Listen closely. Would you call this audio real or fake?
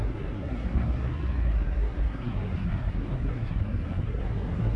fake